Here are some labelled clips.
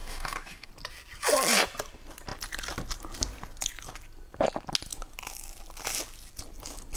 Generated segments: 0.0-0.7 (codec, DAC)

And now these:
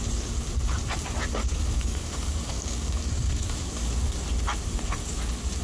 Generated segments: 1.4-3.9 (codec, DAC)